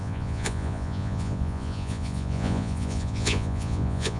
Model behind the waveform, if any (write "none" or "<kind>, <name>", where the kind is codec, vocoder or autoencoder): vocoder, Vocos